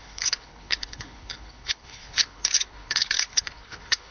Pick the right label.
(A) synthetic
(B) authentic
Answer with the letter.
A